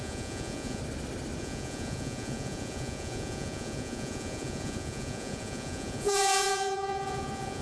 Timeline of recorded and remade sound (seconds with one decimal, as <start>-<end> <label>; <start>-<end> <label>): 0.0-0.8 remade; 0.8-1.4 recorded; 1.4-7.6 remade